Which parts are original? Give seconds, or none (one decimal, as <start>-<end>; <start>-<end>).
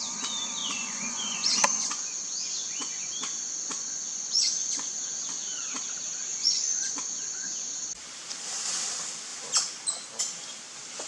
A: 0.0-0.6; 5.3-6.3; 7.8-11.1